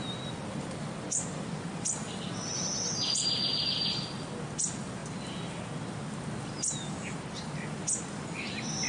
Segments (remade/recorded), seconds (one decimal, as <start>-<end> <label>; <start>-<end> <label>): 0.0-8.9 recorded